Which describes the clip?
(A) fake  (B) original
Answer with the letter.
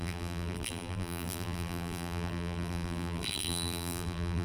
A